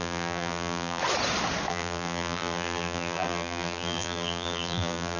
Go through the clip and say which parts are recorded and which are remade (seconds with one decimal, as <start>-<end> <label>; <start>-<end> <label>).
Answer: 0.0-1.0 remade; 1.0-1.7 recorded; 1.7-5.2 remade